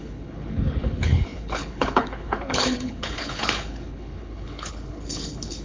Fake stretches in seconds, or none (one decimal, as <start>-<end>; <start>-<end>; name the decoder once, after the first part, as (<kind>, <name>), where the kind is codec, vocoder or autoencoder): 0.0-5.6 (codec, HILCodec)